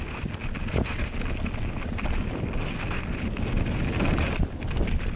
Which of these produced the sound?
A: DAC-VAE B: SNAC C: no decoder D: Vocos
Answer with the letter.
C